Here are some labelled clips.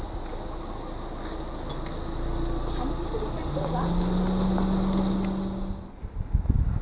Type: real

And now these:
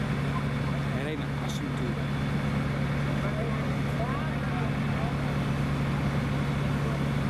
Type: real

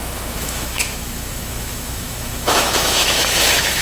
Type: fake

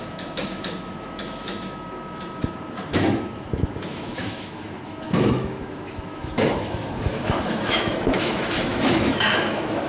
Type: fake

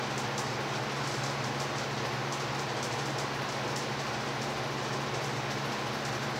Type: real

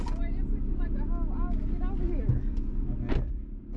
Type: real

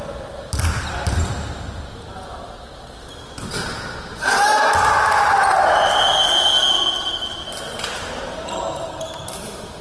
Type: real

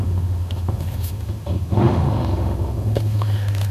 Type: fake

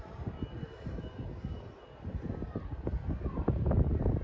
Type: real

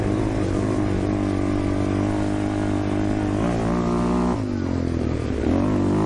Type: real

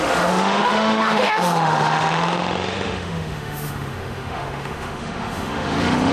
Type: fake